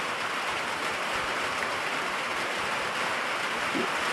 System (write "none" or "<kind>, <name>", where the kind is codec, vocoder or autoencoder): none